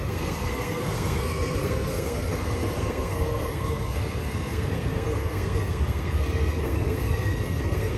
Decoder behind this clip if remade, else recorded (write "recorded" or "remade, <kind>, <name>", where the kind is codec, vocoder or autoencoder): remade, codec, SNAC